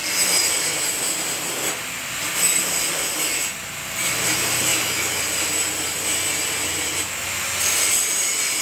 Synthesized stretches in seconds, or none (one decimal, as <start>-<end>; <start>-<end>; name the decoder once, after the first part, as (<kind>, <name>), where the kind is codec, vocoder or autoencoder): 4.7-5.2 (autoencoder, DAC-VAE)